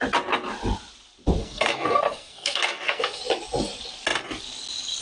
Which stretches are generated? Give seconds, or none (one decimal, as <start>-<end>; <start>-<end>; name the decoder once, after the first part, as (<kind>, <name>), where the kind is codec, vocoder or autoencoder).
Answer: 1.4-3.2 (codec, SNAC)